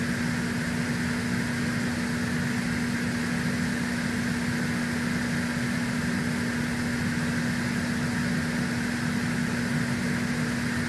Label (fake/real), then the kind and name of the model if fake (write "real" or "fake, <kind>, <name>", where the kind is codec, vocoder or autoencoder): real